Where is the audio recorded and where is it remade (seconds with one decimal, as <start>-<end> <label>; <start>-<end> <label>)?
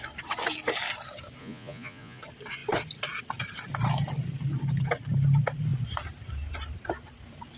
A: 0.0-1.4 recorded; 1.4-2.2 remade; 2.2-7.6 recorded